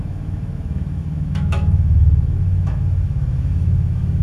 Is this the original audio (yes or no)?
no